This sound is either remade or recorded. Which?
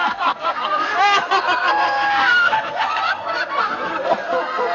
remade